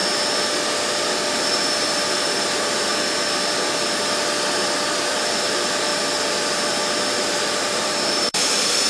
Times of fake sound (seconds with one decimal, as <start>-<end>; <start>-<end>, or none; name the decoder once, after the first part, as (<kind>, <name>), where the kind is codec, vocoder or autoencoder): 1.3-2.9 (vocoder, BigVGAN v2); 5.1-5.9; 7.2-8.9